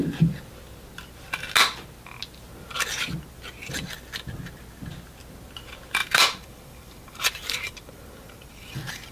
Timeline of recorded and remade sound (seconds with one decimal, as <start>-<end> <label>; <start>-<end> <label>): 0.0-6.0 recorded; 6.0-9.1 remade